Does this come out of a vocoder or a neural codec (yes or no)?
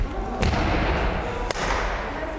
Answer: no